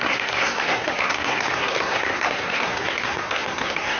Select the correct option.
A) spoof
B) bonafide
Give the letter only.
A